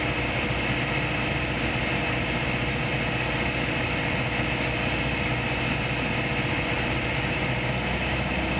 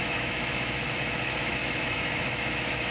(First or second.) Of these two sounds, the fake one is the second